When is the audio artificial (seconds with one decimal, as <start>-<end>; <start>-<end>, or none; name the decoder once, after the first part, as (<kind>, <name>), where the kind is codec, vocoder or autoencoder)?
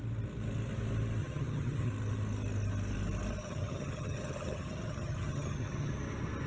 1.2-1.9 (vocoder, HiFi-GAN); 3.4-5.9